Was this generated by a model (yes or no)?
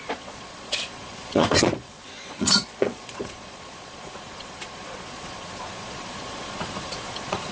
yes